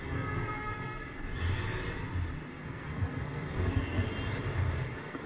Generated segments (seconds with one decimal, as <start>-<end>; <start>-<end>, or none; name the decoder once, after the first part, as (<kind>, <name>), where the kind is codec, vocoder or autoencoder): 0.0-1.3 (codec, SNAC); 2.5-4.1; 4.8-5.3